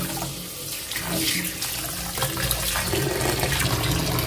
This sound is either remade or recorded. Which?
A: recorded